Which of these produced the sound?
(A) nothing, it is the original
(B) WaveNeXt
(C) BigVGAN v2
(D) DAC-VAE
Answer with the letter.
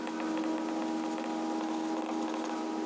A